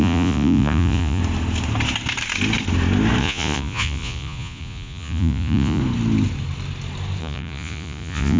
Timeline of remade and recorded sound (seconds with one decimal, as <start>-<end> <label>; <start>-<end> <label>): 0.0-1.2 remade; 1.2-3.2 recorded; 3.2-5.8 remade; 5.8-7.2 recorded; 7.2-8.4 remade